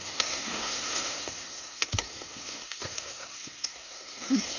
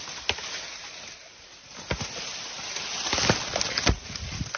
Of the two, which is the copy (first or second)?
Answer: first